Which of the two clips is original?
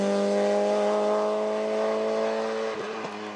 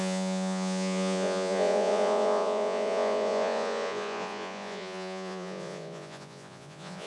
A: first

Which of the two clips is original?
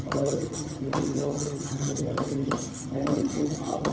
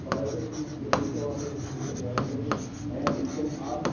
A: second